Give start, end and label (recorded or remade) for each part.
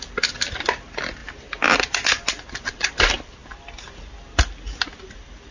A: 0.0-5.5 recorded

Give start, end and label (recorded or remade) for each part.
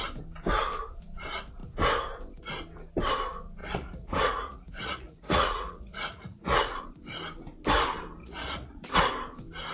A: 0.0-3.6 recorded; 3.6-6.8 remade; 6.8-8.2 recorded; 8.2-9.0 remade; 9.0-9.7 recorded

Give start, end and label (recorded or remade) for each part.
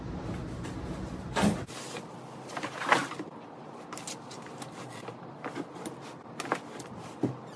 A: 0.0-7.6 recorded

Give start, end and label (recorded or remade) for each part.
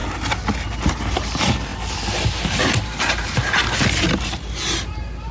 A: 0.0-5.3 recorded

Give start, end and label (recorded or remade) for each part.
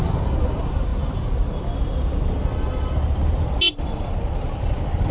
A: 0.0-5.1 recorded